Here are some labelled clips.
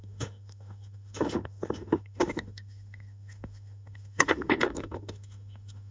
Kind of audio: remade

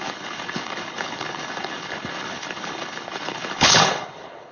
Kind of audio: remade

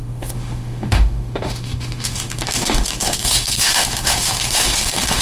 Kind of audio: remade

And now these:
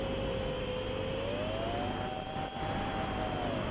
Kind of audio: recorded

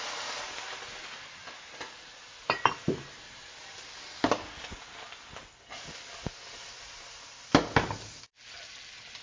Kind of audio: recorded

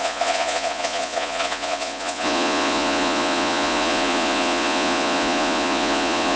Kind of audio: remade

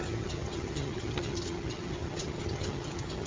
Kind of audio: remade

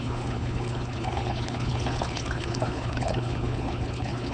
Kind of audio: remade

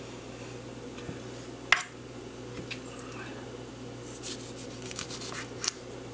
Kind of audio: recorded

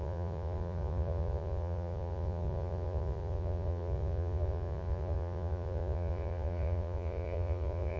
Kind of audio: remade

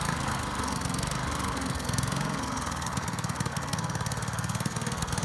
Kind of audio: remade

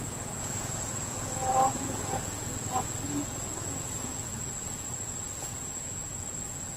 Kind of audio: remade